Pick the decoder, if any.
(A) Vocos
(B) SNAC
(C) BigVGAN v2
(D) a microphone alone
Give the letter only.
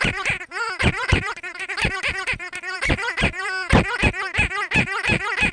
C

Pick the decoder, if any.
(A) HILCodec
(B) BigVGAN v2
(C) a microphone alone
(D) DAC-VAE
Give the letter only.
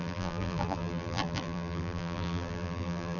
B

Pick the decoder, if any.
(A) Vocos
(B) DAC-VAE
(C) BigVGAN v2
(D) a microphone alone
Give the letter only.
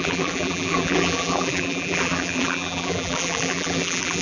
C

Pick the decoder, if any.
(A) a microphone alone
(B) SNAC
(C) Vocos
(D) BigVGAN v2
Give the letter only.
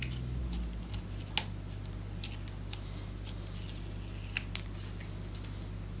A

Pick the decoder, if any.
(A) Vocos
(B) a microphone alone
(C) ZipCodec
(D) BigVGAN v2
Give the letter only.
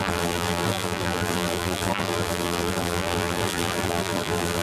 D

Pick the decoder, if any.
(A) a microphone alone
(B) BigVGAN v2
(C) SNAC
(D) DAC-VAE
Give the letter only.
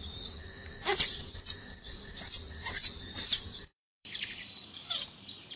B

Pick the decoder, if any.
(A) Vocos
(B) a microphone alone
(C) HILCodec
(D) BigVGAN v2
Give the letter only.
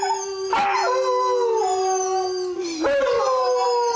B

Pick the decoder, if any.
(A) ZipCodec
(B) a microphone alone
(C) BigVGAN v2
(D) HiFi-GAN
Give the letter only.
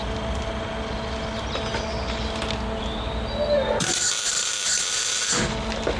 B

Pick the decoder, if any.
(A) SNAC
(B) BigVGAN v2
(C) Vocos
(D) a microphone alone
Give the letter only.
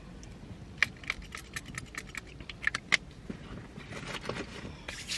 D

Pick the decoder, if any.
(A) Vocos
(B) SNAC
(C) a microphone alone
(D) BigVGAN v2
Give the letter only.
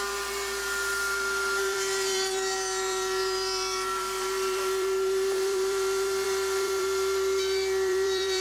D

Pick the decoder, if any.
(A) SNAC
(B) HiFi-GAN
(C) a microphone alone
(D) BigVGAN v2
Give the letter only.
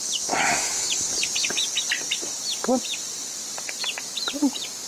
C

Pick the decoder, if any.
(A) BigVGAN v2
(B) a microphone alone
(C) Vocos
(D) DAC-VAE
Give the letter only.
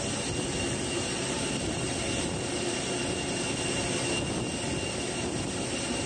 B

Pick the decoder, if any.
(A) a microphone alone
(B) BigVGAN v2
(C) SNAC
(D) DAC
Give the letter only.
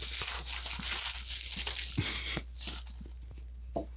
A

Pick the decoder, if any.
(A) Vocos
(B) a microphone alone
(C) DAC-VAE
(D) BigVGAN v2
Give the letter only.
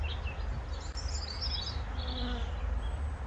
B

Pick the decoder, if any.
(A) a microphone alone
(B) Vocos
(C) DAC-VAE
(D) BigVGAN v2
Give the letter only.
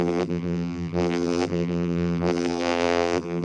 D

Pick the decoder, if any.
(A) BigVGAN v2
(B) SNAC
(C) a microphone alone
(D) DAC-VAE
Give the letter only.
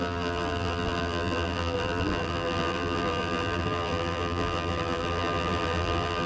A